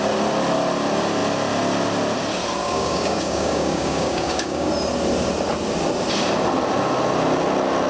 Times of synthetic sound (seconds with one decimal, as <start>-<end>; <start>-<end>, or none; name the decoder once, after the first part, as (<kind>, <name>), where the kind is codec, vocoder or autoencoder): 2.6-4.7 (codec, DAC)